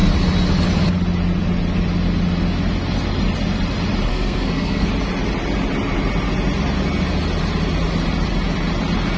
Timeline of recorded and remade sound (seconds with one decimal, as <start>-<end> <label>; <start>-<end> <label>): 0.0-4.1 recorded; 4.1-4.9 remade; 4.9-9.2 recorded